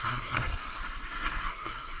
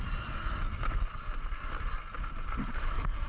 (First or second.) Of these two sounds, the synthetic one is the first